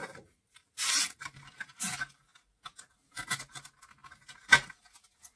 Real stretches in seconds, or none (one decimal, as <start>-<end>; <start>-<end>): 1.5-5.4